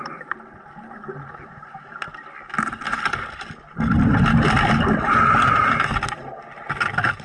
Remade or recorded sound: recorded